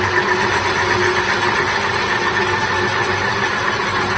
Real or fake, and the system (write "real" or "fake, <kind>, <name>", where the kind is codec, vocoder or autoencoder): real